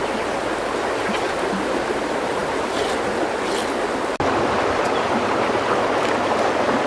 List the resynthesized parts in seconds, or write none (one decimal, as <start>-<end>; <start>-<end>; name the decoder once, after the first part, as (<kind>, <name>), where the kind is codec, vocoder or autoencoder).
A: none